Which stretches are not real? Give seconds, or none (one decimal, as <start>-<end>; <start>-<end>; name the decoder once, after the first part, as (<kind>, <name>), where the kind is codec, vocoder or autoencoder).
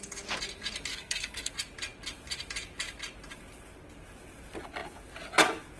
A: 0.9-1.5 (codec, SNAC)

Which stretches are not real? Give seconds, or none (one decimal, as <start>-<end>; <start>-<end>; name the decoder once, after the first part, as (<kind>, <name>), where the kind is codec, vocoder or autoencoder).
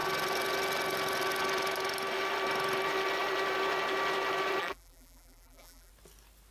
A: 4.6-5.9 (vocoder, BigVGAN v2)